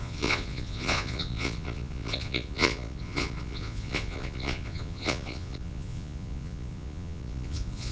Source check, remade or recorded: remade